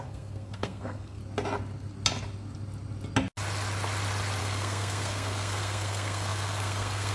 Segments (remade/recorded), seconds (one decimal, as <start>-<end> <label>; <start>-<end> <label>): 0.0-1.2 remade; 1.2-4.4 recorded; 4.4-7.1 remade